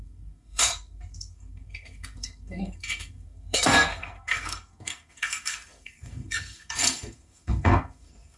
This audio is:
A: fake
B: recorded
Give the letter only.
A